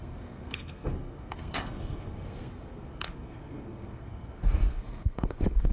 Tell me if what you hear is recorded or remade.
remade